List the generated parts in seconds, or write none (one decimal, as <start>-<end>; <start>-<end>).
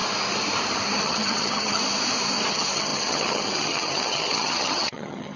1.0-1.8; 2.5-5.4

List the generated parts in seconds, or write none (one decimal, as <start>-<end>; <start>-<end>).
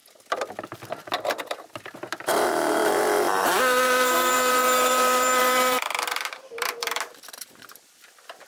2.3-7.0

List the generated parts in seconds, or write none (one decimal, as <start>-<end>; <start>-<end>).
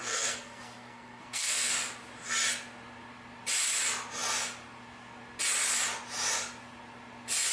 0.0-1.7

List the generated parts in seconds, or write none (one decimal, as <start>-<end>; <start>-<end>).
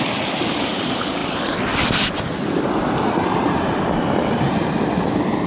none